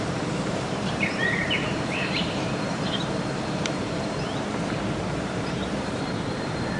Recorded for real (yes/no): no